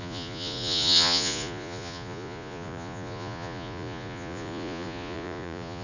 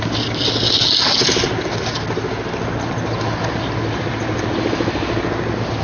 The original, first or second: second